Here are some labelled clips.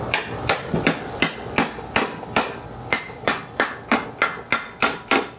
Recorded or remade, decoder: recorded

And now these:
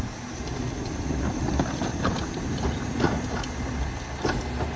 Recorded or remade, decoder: recorded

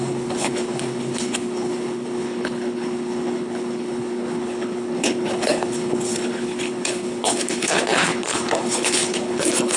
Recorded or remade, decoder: remade, codec, HILCodec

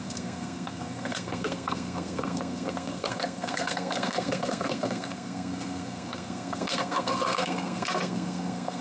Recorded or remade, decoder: remade, codec, SNAC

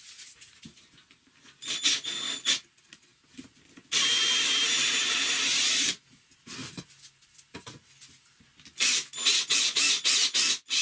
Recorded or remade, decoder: recorded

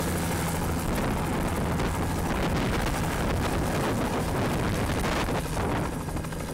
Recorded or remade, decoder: recorded